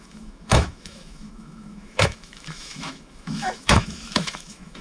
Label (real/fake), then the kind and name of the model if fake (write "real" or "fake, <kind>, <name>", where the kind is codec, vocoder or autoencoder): fake, autoencoder, DAC-VAE